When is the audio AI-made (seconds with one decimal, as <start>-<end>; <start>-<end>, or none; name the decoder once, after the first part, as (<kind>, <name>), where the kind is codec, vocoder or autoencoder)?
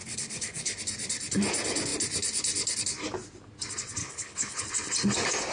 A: 0.0-0.8 (codec, HILCodec); 4.0-4.6